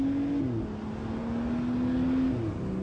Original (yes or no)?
yes